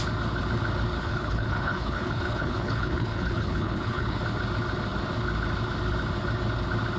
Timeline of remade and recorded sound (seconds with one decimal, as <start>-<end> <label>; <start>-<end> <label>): 0.0-1.0 recorded; 1.0-4.2 remade; 4.2-7.0 recorded